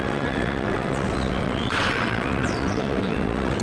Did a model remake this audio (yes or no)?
yes